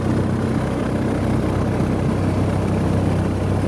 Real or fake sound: real